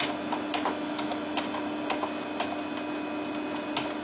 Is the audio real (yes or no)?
yes